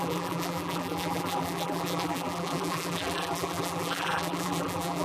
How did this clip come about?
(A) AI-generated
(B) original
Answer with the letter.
A